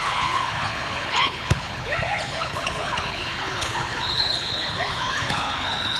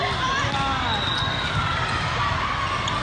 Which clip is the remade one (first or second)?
first